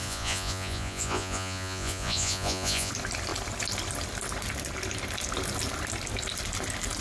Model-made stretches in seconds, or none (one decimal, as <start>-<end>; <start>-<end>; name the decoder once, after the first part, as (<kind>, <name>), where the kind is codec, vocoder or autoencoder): 0.0-2.9 (vocoder, Vocos)